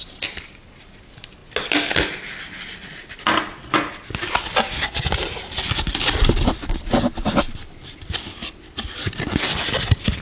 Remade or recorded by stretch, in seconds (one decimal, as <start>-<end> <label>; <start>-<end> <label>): 0.0-10.2 recorded

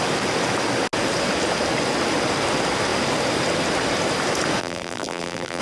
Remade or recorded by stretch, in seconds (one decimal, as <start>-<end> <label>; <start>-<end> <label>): 0.0-4.6 recorded; 4.6-5.6 remade

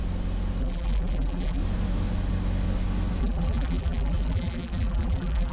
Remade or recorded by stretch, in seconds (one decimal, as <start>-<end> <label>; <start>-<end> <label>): 0.0-0.6 recorded; 0.6-1.6 remade; 1.6-3.2 recorded; 3.2-5.5 remade

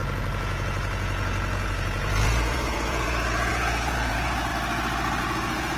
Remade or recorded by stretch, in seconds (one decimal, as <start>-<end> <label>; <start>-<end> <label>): 0.0-4.5 remade; 4.5-5.2 recorded; 5.2-5.8 remade

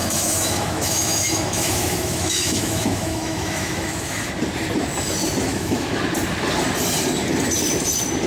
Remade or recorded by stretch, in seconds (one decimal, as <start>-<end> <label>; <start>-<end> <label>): 0.0-4.3 remade; 4.3-5.4 recorded; 5.4-6.0 remade; 6.0-8.3 recorded

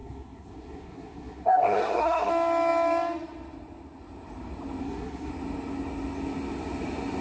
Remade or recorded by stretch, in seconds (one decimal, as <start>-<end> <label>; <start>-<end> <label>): 0.0-2.3 remade; 2.3-4.8 recorded; 4.8-5.3 remade; 5.3-7.2 recorded

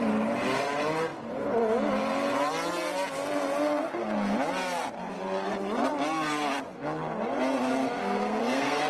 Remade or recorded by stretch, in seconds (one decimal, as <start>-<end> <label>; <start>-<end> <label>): 0.0-8.0 recorded; 8.0-8.9 remade